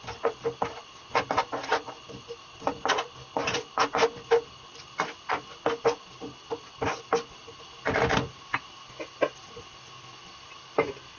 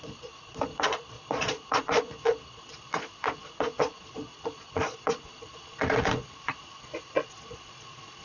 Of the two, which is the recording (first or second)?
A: first